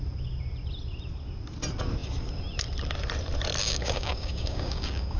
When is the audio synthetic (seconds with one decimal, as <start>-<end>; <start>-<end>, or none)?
3.6-5.2